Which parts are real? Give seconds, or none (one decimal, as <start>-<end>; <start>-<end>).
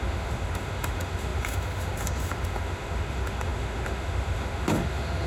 none